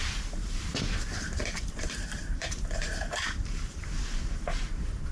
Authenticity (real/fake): fake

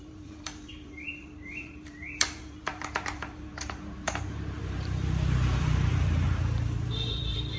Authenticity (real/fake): fake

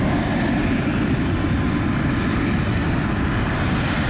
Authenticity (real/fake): real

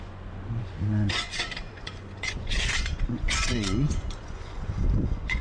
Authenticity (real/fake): fake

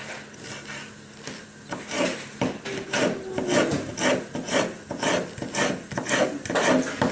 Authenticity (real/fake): real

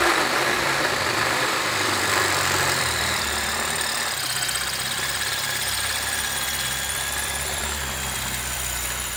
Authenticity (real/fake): fake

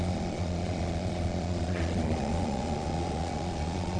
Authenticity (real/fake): fake